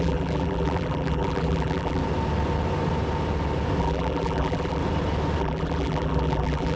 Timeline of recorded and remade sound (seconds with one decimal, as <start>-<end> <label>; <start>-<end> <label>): 0.0-2.0 remade; 2.0-3.8 recorded; 3.8-4.8 remade; 4.8-5.4 recorded; 5.4-6.8 remade